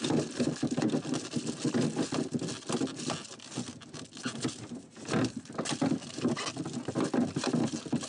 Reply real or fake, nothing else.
real